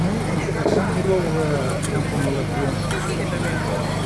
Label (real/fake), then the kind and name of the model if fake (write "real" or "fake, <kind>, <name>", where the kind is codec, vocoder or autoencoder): real